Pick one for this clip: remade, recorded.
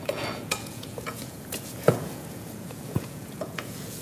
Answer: remade